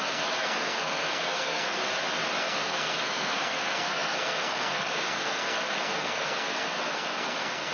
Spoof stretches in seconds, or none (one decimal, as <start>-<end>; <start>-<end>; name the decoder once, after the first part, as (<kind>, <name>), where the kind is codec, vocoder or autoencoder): 0.0-1.8 (codec, SNAC); 2.4-7.7